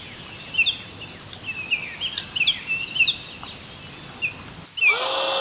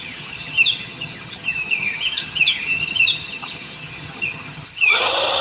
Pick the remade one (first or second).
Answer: second